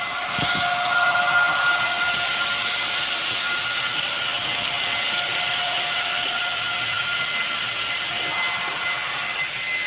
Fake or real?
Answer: real